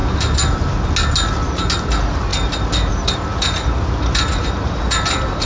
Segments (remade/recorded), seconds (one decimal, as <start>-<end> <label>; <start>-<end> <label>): 0.0-5.5 recorded